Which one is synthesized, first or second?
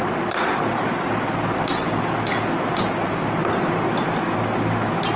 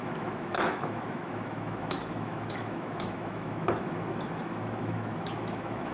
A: second